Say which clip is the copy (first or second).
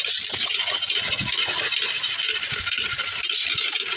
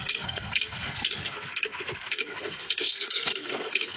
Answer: second